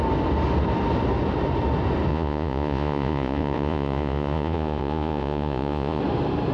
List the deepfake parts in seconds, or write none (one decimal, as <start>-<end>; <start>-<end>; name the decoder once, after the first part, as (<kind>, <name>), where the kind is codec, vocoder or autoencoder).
2.1-6.0 (vocoder, Vocos)